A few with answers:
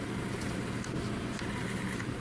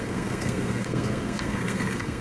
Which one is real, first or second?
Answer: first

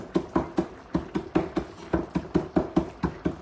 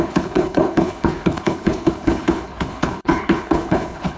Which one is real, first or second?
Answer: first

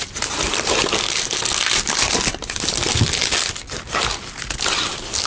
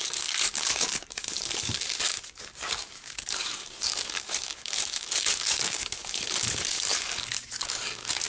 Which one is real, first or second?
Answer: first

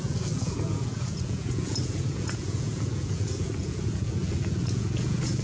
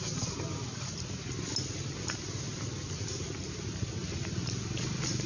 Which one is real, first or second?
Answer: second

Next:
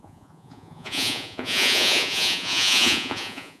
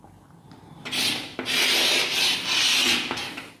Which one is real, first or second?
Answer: second